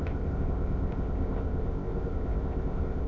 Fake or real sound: fake